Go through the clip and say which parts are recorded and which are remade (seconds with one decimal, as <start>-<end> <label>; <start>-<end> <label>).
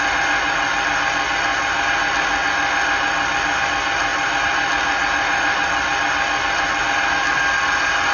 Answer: 0.0-8.1 recorded